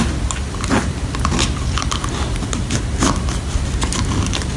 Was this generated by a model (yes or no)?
no